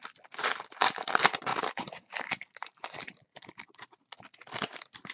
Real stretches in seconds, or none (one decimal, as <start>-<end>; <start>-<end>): 0.0-1.5; 4.1-5.1